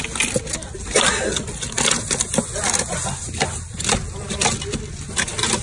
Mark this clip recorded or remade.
recorded